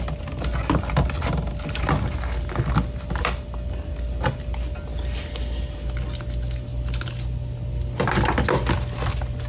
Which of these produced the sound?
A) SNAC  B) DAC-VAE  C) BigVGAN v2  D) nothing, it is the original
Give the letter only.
D